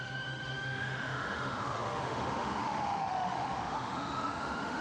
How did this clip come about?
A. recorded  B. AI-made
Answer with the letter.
B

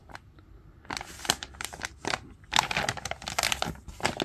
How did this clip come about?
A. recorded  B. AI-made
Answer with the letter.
A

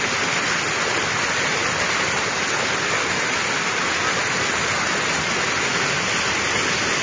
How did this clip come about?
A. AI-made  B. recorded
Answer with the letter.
B